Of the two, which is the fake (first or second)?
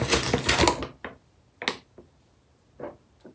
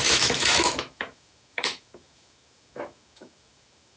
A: second